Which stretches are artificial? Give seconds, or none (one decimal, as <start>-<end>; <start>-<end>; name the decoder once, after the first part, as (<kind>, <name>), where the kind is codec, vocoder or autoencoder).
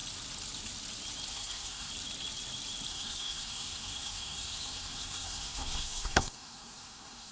1.3-1.9 (codec, SNAC); 2.9-7.3